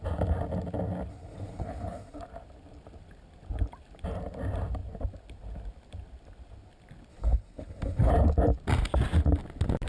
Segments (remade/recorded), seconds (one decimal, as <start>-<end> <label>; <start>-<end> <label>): 0.0-1.1 recorded; 1.1-2.2 remade; 2.2-7.1 recorded; 7.1-8.1 remade; 8.1-9.9 recorded